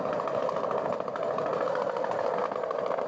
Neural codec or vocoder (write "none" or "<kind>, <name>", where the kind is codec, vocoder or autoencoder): none